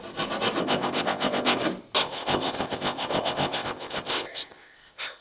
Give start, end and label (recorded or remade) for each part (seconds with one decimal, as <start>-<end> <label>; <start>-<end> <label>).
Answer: 0.0-0.6 recorded; 0.6-1.6 remade; 1.6-2.0 recorded; 2.0-5.2 remade